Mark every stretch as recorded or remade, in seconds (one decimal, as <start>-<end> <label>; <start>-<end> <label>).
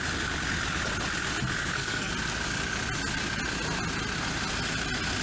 0.0-1.6 recorded; 1.6-2.1 remade; 2.1-5.2 recorded